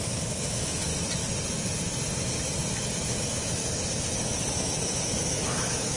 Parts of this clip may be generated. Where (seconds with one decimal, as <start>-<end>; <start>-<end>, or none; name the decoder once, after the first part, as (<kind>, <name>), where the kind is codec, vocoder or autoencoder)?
0.0-0.9 (autoencoder, DAC-VAE); 2.7-3.6; 4.5-6.0